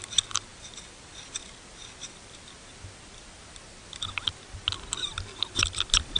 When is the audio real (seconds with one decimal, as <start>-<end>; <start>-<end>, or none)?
0.0-6.2